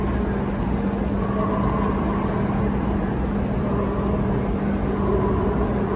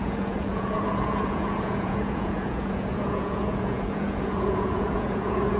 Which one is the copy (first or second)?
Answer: second